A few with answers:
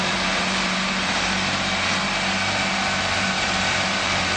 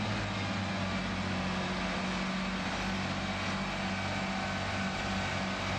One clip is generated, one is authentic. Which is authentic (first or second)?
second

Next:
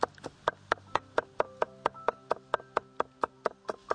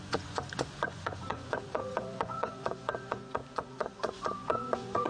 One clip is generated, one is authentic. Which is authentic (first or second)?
first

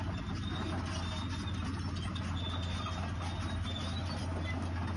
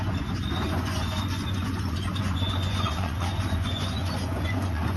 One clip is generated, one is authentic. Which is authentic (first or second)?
first